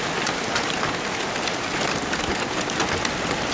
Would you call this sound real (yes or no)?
yes